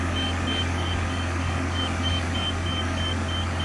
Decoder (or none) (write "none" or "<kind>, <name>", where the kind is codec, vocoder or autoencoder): codec, DAC